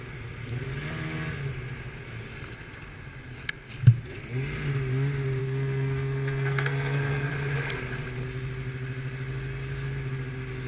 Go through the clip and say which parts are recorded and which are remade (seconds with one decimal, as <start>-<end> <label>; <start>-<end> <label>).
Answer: 0.0-5.4 recorded; 5.4-7.3 remade; 7.3-10.7 recorded